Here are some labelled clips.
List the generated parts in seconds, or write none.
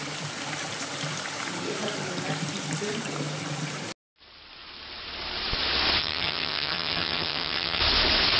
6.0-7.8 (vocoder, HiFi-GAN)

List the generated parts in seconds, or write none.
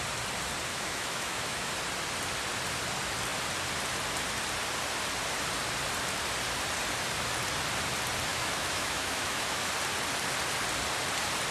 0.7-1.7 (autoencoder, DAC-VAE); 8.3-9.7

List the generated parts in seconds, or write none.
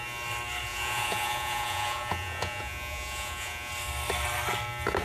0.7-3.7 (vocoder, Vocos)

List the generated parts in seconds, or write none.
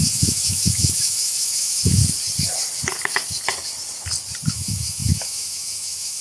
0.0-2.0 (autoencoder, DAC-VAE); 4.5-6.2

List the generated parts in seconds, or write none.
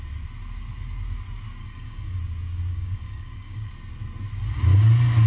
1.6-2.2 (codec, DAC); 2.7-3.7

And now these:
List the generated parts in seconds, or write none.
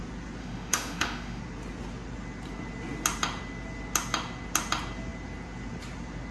0.4-1.4 (autoencoder, DAC-VAE)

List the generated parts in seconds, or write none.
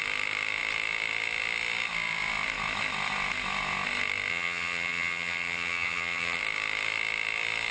4.3-6.4 (vocoder, HiFi-GAN)